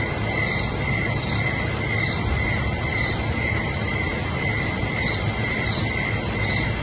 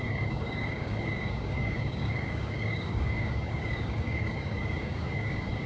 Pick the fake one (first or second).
second